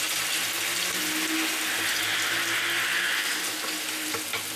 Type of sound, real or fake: real